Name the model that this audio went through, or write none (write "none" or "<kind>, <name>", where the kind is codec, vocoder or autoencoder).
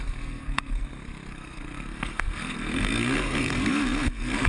codec, SNAC